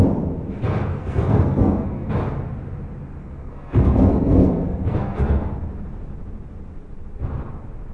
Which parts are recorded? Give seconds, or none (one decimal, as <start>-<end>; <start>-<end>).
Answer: 0.0-0.9; 2.1-3.2; 5.5-7.9

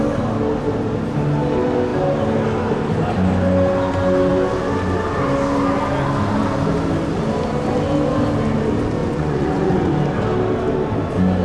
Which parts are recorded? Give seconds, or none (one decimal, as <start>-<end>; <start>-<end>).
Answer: 0.0-9.0; 9.9-11.4

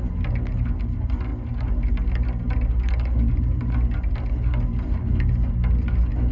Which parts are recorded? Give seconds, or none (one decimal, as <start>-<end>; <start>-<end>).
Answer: 0.0-6.3

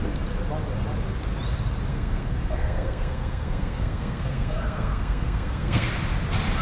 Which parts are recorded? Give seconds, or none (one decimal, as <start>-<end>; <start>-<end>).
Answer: 0.0-1.9; 5.9-6.6

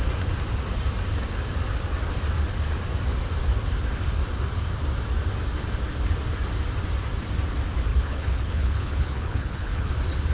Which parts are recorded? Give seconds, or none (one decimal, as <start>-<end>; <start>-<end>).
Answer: 0.0-7.9; 9.9-10.3